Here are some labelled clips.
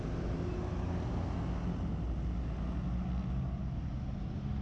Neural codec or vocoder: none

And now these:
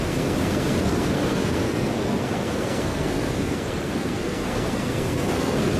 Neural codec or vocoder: codec, SNAC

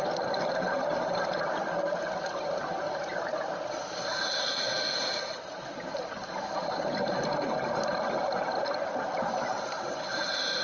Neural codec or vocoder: none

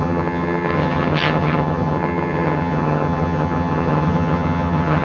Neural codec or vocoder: vocoder, HiFi-GAN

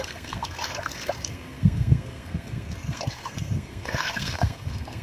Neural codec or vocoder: codec, SNAC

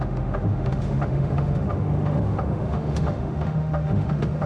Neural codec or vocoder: autoencoder, DAC-VAE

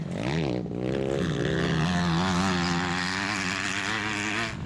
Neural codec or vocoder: none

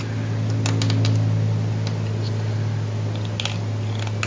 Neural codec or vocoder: none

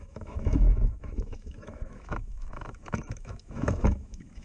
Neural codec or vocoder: autoencoder, DAC-VAE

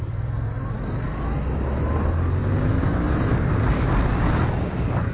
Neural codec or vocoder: none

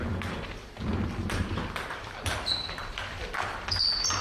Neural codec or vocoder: vocoder, BigVGAN v2